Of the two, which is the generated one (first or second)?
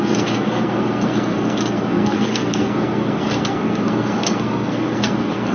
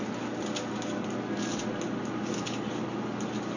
first